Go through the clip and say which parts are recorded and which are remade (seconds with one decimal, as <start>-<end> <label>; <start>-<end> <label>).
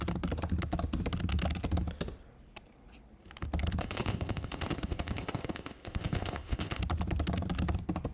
0.0-3.8 recorded; 3.8-6.8 remade; 6.8-8.1 recorded